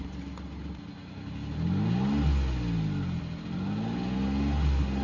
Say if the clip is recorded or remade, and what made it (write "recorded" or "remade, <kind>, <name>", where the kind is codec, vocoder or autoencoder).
recorded